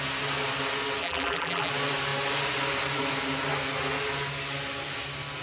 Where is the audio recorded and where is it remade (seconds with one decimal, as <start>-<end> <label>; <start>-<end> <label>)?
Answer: 0.0-1.0 recorded; 1.0-1.7 remade; 1.7-5.4 recorded